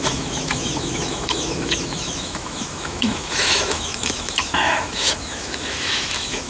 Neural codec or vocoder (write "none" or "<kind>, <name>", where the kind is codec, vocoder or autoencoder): autoencoder, DAC-VAE